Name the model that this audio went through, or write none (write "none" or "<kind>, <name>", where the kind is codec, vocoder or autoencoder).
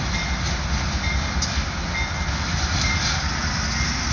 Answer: none